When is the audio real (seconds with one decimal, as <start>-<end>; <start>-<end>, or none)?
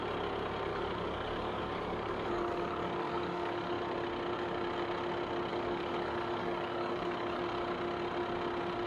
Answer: 0.0-0.7; 3.8-5.5; 7.4-8.9